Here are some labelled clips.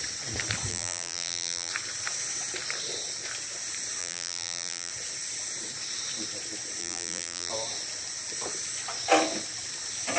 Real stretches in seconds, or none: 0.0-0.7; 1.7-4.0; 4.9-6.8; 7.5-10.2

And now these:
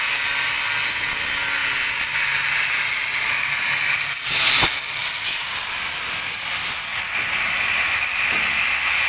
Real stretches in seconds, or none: 0.0-6.9; 7.5-9.1

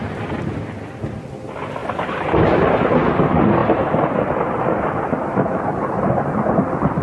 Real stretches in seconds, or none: 0.0-1.8; 2.5-3.6; 6.5-7.0

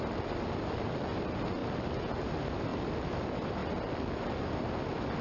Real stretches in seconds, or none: 1.6-2.2; 2.7-3.2; 3.6-4.6

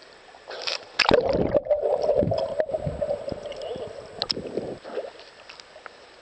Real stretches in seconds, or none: 2.6-6.2

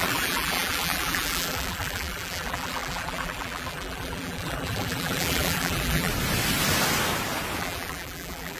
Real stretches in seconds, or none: 6.1-7.6

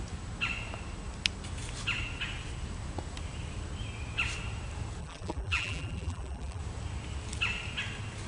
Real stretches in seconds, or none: 0.0-5.0; 6.6-8.3